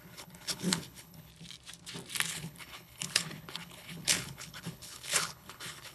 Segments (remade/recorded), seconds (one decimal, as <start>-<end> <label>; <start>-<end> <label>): 0.0-1.3 remade; 1.3-2.3 recorded; 2.3-5.9 remade